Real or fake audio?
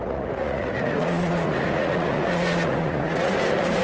fake